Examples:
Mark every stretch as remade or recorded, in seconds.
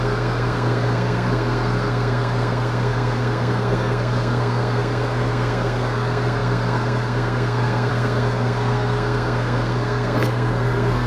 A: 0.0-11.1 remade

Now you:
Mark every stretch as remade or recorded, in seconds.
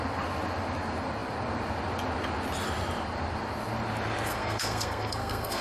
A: 0.0-4.3 recorded; 4.3-5.6 remade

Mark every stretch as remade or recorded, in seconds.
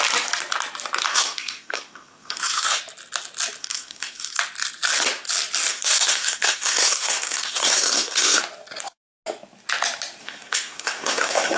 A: 0.0-1.1 recorded; 1.1-2.8 remade; 2.8-3.6 recorded; 3.6-4.4 remade; 4.4-5.7 recorded; 5.7-8.4 remade; 8.4-10.2 recorded; 10.2-11.6 remade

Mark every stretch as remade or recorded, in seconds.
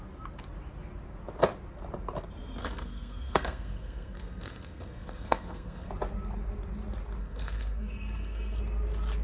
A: 0.0-2.6 recorded; 2.6-5.9 remade; 5.9-7.2 recorded; 7.2-8.6 remade; 8.6-9.2 recorded